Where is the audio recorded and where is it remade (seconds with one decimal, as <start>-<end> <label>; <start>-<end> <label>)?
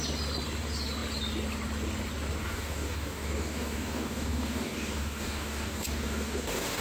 0.0-2.4 recorded; 2.4-6.8 remade